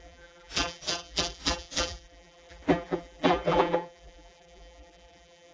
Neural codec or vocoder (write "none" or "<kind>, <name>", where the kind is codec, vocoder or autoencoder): vocoder, BigVGAN v2